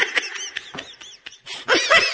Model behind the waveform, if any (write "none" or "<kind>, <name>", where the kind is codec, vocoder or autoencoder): none